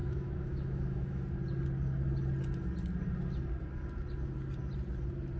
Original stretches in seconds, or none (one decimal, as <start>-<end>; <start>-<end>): 1.2-5.4